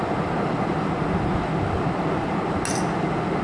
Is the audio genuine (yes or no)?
yes